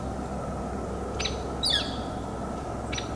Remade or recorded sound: recorded